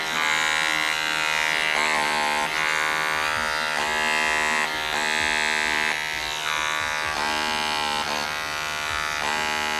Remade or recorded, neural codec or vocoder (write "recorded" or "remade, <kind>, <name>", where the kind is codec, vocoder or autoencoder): recorded